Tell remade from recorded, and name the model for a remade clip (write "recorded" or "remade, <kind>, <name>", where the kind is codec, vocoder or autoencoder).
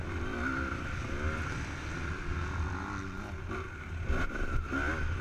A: recorded